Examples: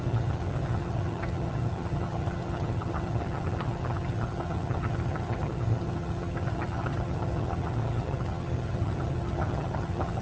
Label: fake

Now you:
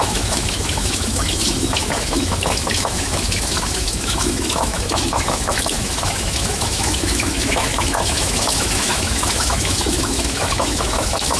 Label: fake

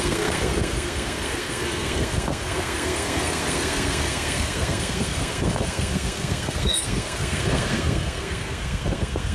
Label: fake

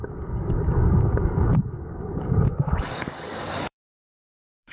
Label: fake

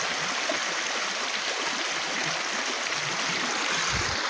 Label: real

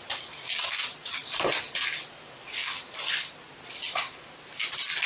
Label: real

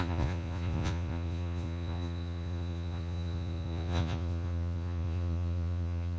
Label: fake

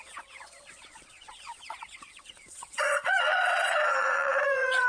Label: fake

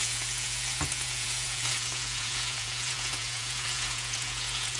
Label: fake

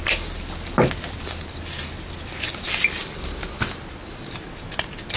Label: real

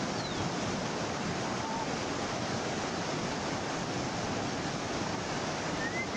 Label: real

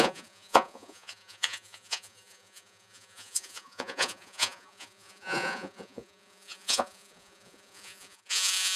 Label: fake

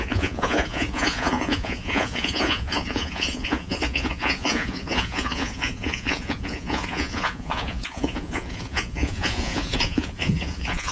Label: fake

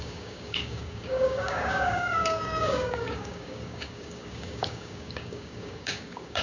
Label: fake